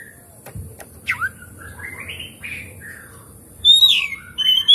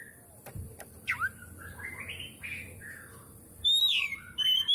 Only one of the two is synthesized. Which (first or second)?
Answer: first